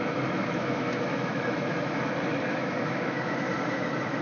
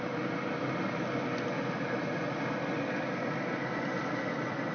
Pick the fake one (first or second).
first